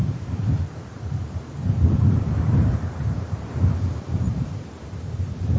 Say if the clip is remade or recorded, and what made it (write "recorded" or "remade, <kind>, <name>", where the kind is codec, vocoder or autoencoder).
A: remade, vocoder, BigVGAN v2